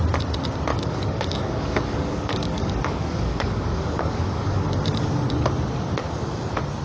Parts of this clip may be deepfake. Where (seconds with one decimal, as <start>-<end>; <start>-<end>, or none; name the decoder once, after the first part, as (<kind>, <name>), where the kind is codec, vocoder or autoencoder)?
0.7-4.8 (codec, DAC)